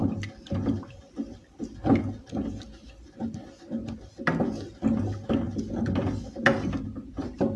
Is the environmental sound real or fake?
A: real